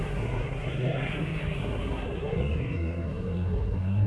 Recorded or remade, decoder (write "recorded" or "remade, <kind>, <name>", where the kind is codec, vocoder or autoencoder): remade, codec, SNAC